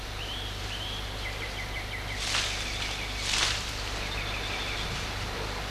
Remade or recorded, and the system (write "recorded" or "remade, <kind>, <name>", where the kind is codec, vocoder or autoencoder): recorded